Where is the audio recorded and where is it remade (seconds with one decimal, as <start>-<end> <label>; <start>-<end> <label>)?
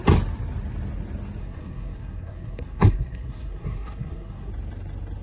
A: 0.0-1.4 recorded; 1.4-4.5 remade; 4.5-5.2 recorded